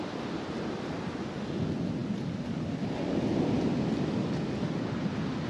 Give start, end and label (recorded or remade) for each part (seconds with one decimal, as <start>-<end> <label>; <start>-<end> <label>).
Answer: 0.0-5.5 recorded